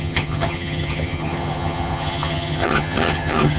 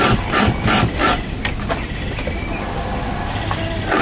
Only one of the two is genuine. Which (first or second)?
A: second